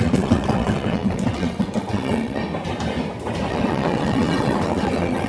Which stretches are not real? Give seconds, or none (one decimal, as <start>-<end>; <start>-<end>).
0.0-2.4; 3.5-5.3